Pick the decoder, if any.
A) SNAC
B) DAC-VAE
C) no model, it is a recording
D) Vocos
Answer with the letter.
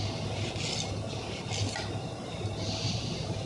C